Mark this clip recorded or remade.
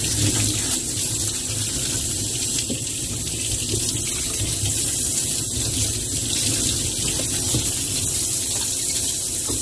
recorded